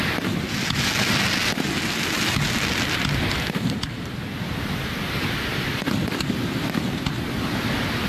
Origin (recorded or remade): recorded